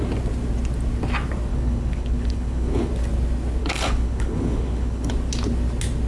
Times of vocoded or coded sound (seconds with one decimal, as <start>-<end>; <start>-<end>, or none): 1.5-2.9; 3.6-5.1